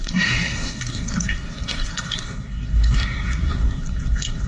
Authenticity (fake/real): fake